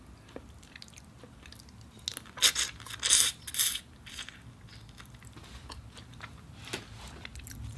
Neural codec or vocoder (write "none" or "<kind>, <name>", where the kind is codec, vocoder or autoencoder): none